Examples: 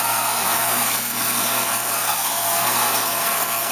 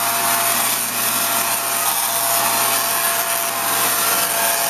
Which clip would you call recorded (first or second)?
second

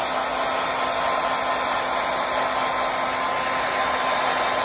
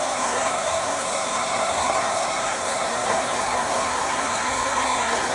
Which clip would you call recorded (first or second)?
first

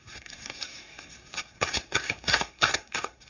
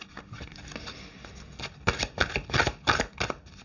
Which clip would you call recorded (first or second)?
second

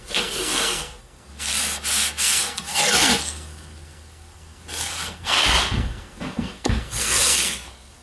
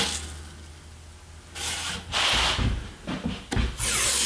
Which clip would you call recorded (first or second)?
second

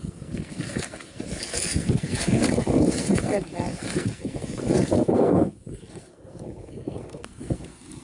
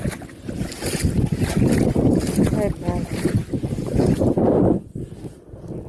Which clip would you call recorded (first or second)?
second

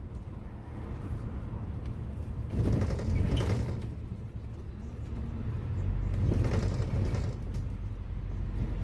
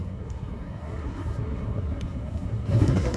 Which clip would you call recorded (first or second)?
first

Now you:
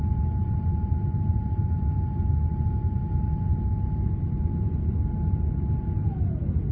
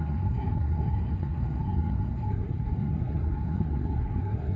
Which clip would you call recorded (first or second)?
first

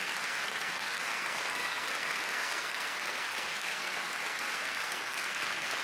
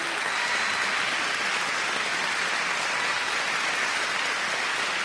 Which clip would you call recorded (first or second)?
second